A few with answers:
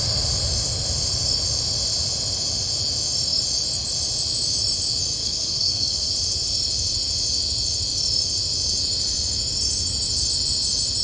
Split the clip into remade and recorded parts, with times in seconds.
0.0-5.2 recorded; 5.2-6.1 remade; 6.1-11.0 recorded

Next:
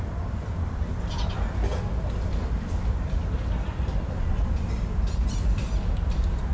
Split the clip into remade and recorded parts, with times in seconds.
0.0-1.7 remade; 1.7-5.2 recorded; 5.2-6.5 remade

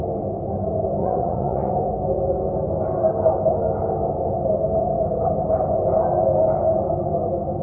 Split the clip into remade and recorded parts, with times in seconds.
0.0-1.0 recorded; 1.0-1.7 remade; 1.7-7.6 recorded

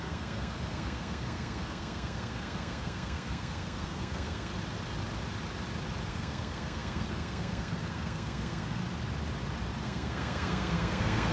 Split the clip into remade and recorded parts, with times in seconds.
0.0-4.5 remade; 4.5-6.1 recorded; 6.1-8.8 remade; 8.8-9.8 recorded; 9.8-11.3 remade

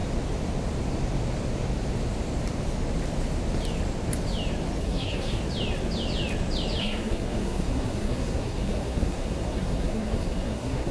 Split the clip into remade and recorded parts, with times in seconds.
0.0-4.8 recorded; 4.8-5.4 remade; 5.4-6.8 recorded; 6.8-10.9 remade

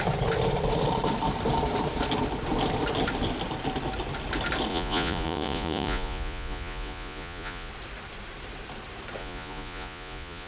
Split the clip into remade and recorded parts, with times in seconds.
0.0-4.7 recorded; 4.7-7.7 remade; 7.7-9.2 recorded; 9.2-10.5 remade

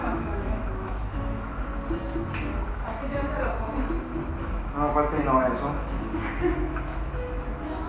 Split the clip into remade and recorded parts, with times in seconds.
0.0-1.7 remade; 1.7-2.7 recorded; 2.7-3.3 remade; 3.3-4.4 recorded; 4.4-4.9 remade; 4.9-5.4 recorded; 5.4-7.9 remade